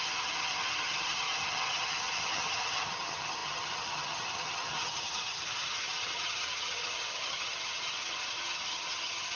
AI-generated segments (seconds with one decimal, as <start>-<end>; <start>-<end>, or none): 0.0-9.4

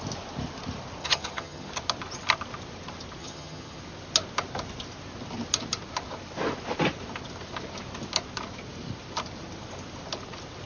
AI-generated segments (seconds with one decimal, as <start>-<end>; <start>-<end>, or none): 1.0-1.7; 3.2-3.8

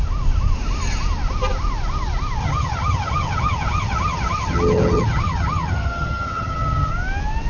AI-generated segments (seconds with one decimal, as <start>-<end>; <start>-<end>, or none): 2.4-6.9

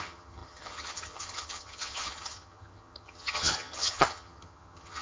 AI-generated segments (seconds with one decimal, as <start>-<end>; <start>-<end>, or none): 0.0-5.0